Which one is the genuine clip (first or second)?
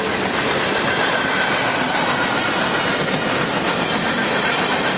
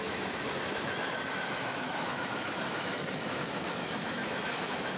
first